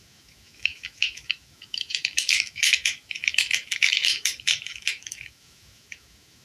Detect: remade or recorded remade